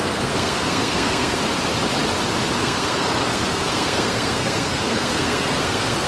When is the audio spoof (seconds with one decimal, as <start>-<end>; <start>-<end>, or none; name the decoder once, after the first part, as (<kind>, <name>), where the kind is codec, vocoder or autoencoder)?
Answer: 0.0-1.4 (codec, SNAC); 2.6-6.1